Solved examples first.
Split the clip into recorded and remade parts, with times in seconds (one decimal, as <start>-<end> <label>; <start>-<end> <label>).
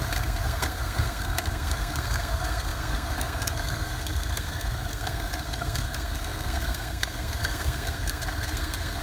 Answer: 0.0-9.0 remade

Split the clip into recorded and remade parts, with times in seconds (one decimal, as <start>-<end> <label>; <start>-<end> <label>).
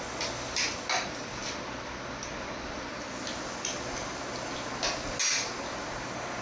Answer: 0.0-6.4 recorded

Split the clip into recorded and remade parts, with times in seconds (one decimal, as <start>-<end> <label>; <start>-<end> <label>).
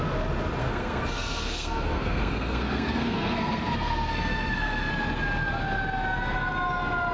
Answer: 0.0-0.6 recorded; 0.6-4.9 remade; 4.9-7.1 recorded